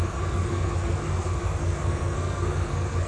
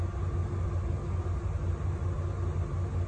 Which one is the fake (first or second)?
first